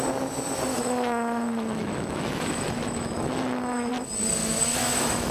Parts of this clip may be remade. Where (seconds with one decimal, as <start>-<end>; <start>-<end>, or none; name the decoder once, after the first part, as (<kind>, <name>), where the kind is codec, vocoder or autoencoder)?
0.7-3.9 (autoencoder, DAC-VAE); 4.4-5.3